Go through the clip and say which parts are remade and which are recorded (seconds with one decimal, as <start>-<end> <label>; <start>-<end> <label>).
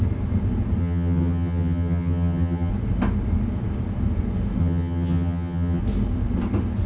0.0-0.8 recorded; 0.8-2.7 remade; 2.7-4.6 recorded; 4.6-5.8 remade; 5.8-6.9 recorded